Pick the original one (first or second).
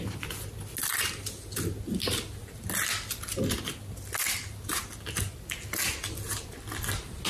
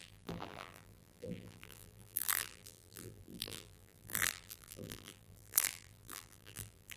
first